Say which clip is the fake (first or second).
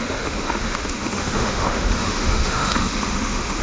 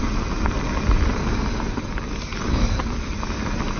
first